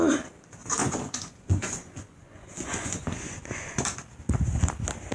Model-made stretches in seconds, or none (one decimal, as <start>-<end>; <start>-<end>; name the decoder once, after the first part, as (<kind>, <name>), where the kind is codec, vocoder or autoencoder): 0.8-3.8 (vocoder, Vocos)